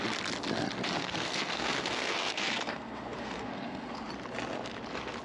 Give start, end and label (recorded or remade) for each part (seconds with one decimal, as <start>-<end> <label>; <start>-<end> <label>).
0.0-1.0 recorded; 1.0-4.1 remade; 4.1-5.2 recorded